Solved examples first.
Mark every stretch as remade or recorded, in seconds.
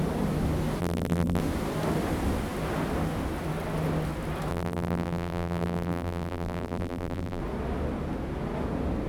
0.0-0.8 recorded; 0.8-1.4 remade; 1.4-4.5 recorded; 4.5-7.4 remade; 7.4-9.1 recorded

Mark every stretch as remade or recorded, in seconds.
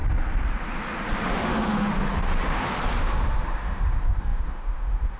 0.0-1.3 recorded; 1.3-1.9 remade; 1.9-3.0 recorded; 3.0-5.2 remade